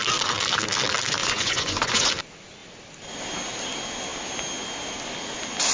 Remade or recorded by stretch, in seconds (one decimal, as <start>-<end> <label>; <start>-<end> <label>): 0.0-1.2 recorded; 1.2-2.1 remade; 2.1-5.7 recorded